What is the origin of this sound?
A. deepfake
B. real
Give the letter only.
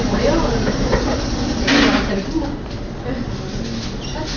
B